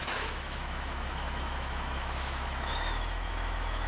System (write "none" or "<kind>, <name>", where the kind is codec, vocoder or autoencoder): autoencoder, DAC-VAE